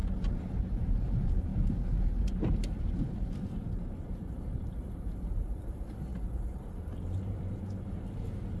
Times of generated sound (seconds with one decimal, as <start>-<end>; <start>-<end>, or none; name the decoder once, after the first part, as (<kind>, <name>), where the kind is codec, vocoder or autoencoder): 0.6-8.6 (vocoder, BigVGAN v2)